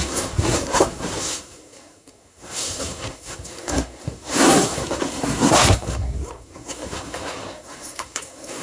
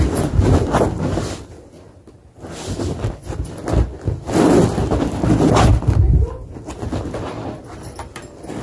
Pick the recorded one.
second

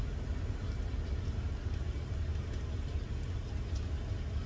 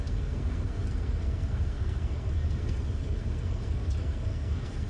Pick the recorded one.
first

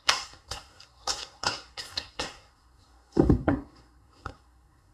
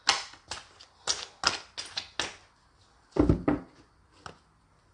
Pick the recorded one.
second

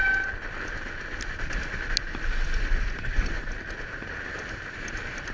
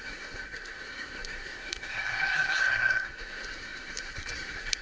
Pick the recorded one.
first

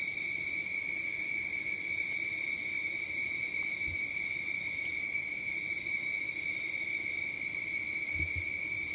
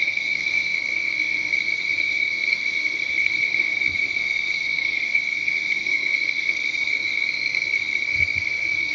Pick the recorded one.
first